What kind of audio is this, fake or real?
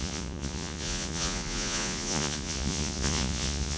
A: fake